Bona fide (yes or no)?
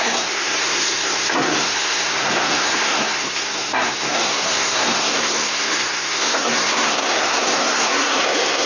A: no